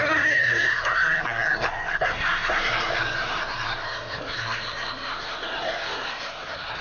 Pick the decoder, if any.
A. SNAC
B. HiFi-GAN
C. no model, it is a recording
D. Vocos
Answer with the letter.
A